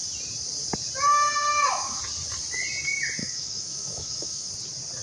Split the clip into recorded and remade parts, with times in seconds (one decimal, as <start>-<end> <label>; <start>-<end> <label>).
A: 0.0-1.1 recorded; 1.1-2.0 remade; 2.0-3.2 recorded; 3.2-4.5 remade; 4.5-5.0 recorded